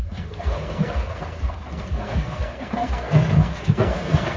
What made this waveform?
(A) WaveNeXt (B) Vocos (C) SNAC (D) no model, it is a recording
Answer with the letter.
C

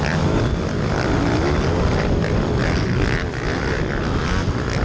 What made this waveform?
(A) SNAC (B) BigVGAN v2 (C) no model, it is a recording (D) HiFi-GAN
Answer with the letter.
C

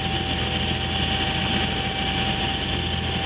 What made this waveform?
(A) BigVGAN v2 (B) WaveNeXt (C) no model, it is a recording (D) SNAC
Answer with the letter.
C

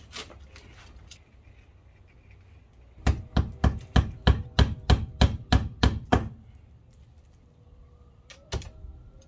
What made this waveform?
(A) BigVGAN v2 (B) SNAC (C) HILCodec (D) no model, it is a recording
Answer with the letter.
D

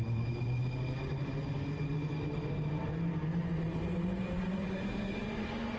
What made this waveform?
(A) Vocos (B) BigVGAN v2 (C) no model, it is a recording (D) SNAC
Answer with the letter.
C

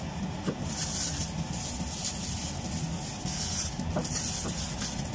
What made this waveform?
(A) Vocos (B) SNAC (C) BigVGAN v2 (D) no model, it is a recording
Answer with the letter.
D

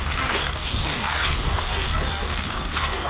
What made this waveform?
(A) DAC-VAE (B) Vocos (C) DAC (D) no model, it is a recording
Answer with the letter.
C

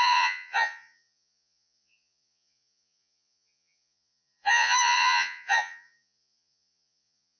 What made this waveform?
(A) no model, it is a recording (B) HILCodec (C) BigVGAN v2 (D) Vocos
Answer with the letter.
D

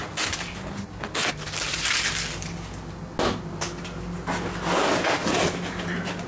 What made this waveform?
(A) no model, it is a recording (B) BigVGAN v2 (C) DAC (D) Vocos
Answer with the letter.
A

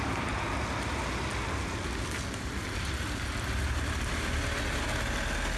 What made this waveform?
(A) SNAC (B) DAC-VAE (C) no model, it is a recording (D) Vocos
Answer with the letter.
C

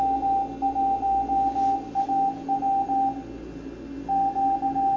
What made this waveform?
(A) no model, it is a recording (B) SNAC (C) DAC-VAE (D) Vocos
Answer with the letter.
A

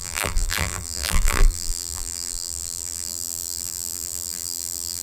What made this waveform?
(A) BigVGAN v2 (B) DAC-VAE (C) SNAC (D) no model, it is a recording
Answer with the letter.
A